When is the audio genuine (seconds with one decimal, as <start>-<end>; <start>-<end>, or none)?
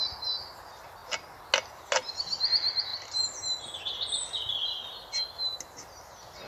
0.0-2.9; 4.1-6.5